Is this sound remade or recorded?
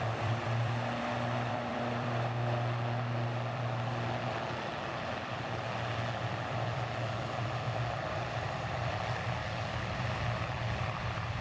remade